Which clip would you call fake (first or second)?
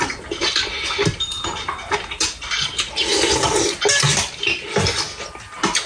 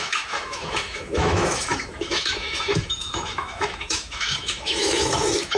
second